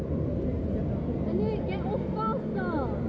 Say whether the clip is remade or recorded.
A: recorded